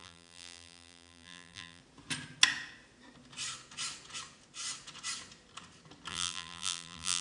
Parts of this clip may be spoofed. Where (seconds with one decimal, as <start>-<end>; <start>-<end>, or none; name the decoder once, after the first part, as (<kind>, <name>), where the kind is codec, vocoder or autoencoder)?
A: 0.0-1.8 (vocoder, BigVGAN v2); 6.1-7.2